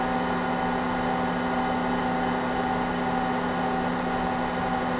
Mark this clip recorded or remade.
recorded